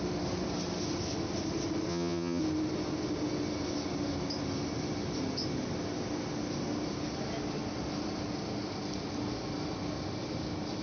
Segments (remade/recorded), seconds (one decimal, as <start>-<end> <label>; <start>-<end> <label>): 0.0-1.9 recorded; 1.9-2.4 remade; 2.4-10.8 recorded